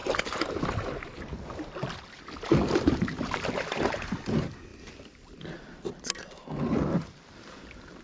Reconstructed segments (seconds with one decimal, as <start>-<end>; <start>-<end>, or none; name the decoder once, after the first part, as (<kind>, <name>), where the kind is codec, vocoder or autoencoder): 0.0-8.0 (vocoder, BigVGAN v2)